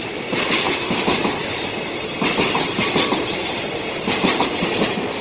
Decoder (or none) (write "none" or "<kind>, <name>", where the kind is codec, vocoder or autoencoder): none